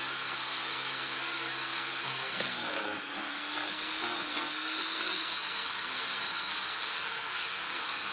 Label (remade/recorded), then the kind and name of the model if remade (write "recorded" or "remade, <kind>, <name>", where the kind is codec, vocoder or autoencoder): remade, codec, SNAC